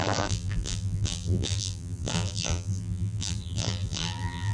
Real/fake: fake